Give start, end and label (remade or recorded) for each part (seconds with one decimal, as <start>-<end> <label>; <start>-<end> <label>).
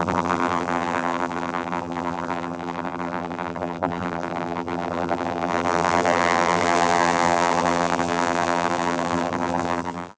0.0-10.2 remade